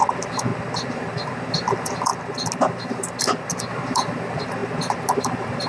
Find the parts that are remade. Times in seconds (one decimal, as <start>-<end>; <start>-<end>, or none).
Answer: 0.0-2.1; 3.7-4.6; 5.2-5.7

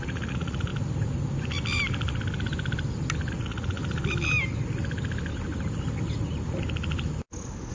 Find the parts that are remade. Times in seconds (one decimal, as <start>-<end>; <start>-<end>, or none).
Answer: 0.0-0.7; 3.3-3.8

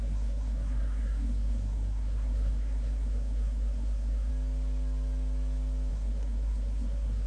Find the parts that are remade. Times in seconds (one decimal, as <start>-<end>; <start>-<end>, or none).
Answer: 0.0-4.3; 5.9-7.3